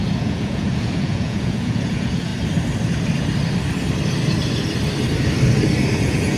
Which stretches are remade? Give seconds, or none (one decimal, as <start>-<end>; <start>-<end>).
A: 0.0-2.3; 6.0-6.4